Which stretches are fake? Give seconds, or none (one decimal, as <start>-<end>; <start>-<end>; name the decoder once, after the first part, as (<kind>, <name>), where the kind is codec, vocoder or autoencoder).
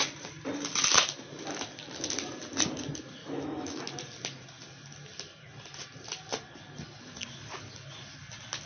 3.2-3.8 (autoencoder, DAC-VAE)